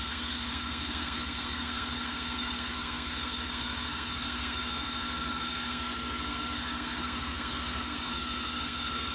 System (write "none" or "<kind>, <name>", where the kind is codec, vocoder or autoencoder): codec, SNAC